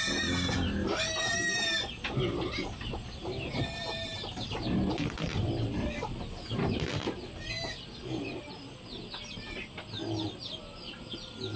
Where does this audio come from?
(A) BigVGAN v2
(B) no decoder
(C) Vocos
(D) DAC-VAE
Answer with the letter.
B